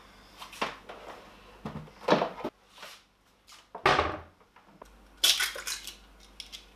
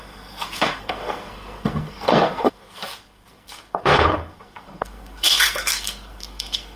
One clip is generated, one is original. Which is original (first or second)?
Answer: first